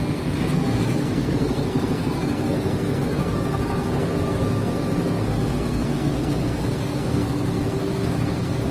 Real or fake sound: fake